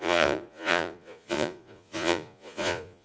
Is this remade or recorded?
remade